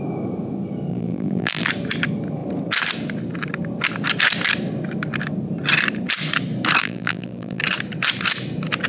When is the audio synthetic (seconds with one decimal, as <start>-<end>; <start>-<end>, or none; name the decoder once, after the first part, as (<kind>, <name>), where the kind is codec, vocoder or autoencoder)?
0.9-1.7 (vocoder, BigVGAN v2); 6.8-7.6